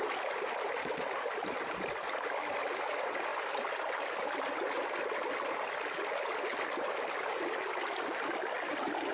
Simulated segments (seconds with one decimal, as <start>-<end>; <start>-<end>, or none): 3.3-3.9; 6.5-9.1